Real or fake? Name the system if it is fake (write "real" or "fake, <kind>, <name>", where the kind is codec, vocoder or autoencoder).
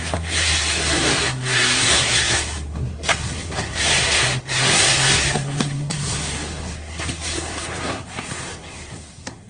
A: fake, codec, SNAC